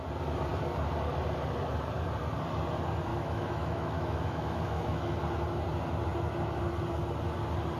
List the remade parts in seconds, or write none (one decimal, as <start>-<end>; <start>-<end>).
3.1-5.2